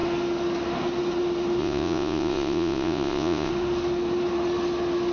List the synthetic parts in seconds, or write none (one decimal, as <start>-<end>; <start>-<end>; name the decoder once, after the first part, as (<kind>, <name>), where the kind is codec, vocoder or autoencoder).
1.6-3.5 (vocoder, Vocos)